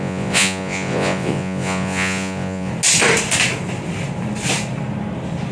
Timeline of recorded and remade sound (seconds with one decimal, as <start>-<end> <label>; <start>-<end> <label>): 0.0-2.7 remade; 2.7-5.5 recorded